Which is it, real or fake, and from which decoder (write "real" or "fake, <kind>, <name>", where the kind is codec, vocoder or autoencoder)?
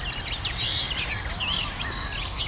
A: real